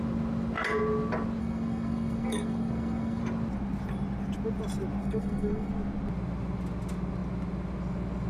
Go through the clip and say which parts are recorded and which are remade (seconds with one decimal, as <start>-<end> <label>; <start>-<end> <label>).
0.0-1.4 recorded; 1.4-3.2 remade; 3.2-5.0 recorded; 5.0-5.7 remade; 5.7-8.3 recorded